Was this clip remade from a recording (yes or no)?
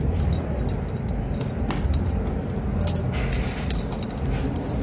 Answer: no